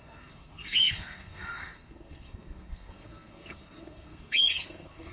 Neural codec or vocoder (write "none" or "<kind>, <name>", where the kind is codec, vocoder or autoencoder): codec, SNAC